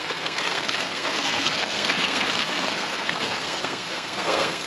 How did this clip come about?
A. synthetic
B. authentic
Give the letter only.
A